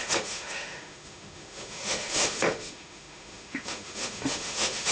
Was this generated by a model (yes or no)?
yes